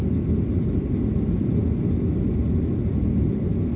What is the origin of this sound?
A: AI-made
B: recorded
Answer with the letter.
B